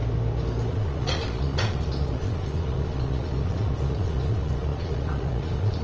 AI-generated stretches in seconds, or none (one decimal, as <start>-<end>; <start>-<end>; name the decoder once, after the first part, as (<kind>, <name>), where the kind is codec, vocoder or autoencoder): 0.7-5.8 (vocoder, Vocos)